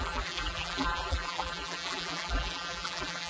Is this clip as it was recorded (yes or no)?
no